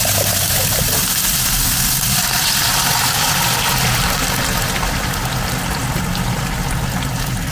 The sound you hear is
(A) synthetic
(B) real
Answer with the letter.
B